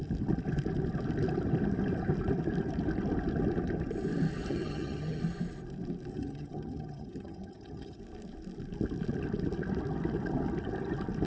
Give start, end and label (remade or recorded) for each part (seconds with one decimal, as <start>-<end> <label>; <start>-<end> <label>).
0.0-4.5 recorded; 4.5-5.2 remade; 5.2-6.1 recorded; 6.1-8.0 remade; 8.0-11.3 recorded